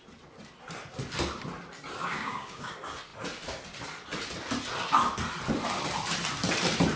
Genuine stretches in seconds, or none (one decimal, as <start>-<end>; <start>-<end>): 0.0-2.0; 2.7-7.0